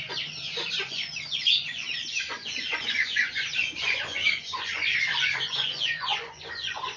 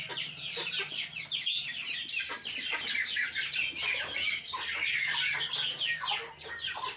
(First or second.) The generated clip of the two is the first